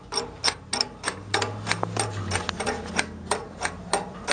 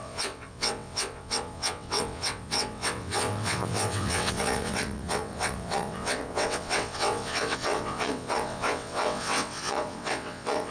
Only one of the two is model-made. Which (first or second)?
second